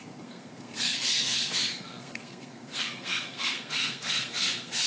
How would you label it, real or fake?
fake